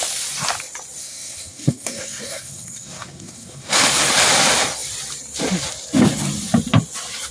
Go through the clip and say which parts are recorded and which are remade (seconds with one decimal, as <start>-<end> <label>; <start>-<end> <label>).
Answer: 0.0-1.0 recorded; 1.0-3.7 remade; 3.7-7.3 recorded